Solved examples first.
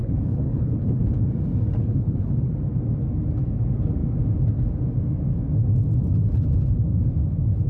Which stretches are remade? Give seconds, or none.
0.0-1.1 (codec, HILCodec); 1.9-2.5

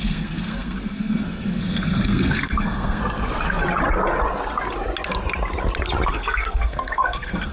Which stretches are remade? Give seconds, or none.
0.0-3.0 (codec, SNAC); 6.1-7.5

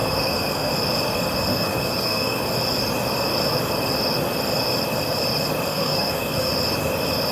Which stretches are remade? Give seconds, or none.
0.0-0.7 (codec, SNAC); 1.5-2.4; 5.7-6.5

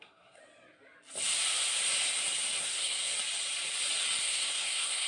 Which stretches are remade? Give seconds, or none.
0.0-0.4 (codec, SNAC); 2.6-3.1; 4.2-5.1

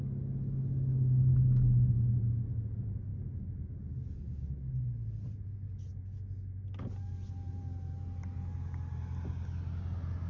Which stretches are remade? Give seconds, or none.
none

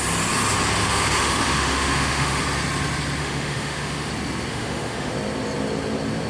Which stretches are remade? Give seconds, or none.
0.8-2.4 (autoencoder, DAC-VAE); 3.2-4.1; 4.5-5.1

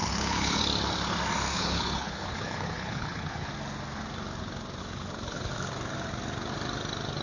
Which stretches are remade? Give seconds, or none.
0.0-0.6 (codec, HILCodec); 1.5-3.5; 4.8-5.5